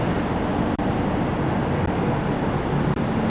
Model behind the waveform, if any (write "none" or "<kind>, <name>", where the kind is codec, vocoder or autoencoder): none